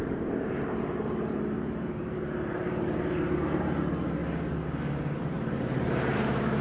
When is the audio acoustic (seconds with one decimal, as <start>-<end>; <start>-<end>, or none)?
4.2-5.2